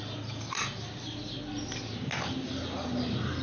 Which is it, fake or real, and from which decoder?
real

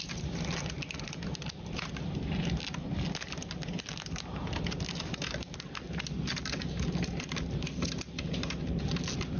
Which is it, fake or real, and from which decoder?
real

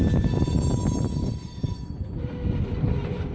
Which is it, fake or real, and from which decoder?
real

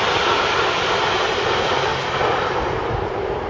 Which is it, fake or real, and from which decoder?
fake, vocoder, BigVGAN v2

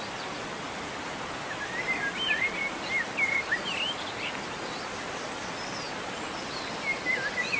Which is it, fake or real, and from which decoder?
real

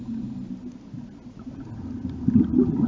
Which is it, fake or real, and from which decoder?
real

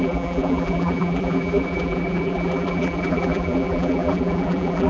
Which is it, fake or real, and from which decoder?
fake, vocoder, BigVGAN v2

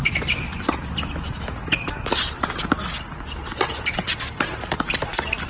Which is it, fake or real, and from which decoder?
real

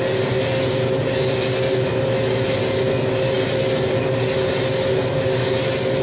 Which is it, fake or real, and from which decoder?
real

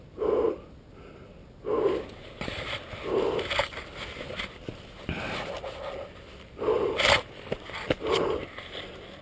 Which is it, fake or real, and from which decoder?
real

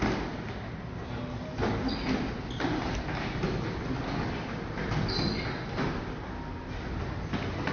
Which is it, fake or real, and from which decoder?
real